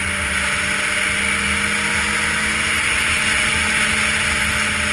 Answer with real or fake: real